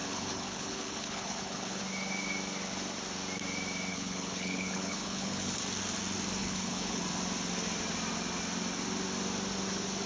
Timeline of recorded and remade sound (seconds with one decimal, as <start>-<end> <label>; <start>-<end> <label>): 0.0-1.8 remade; 1.8-3.9 recorded; 3.9-5.6 remade; 5.6-6.4 recorded; 6.4-7.0 remade; 7.0-10.1 recorded

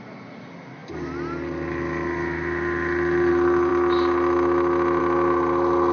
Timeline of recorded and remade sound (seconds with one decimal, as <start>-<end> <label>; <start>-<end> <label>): 0.0-5.9 recorded

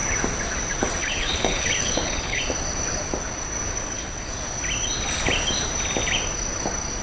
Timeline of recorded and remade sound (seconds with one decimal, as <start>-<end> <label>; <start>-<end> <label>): 0.0-1.0 recorded; 1.0-2.4 remade; 2.4-3.7 recorded; 3.7-4.3 remade; 4.3-7.0 recorded

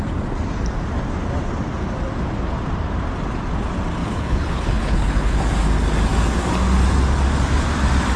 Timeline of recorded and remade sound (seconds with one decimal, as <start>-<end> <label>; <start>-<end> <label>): 0.0-4.0 recorded; 4.0-5.4 remade; 5.4-8.2 recorded

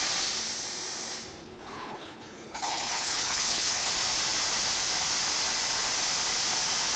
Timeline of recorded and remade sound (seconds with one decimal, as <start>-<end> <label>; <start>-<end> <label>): 0.0-1.4 recorded; 1.4-3.9 remade; 3.9-7.0 recorded

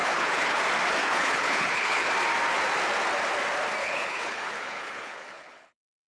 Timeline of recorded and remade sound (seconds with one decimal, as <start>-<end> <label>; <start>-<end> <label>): 0.0-0.6 remade; 0.6-1.0 recorded; 1.0-2.1 remade; 2.1-3.8 recorded; 3.8-6.1 remade

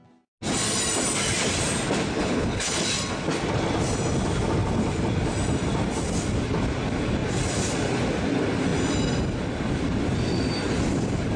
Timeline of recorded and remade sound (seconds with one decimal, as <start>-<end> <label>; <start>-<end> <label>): 0.0-2.2 recorded; 2.2-2.8 remade; 2.8-11.4 recorded

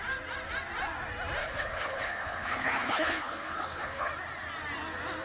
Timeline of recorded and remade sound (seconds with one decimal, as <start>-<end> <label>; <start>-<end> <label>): 0.0-1.4 recorded; 1.4-4.1 remade; 4.1-5.2 recorded